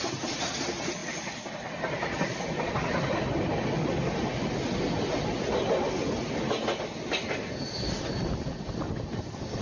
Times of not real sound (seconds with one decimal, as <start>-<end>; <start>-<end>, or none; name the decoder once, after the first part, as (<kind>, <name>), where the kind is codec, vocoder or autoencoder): none